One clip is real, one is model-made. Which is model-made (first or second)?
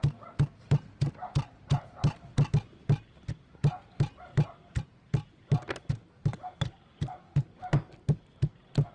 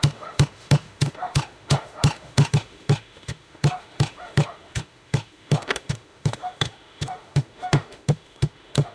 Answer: second